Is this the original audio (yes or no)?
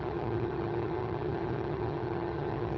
no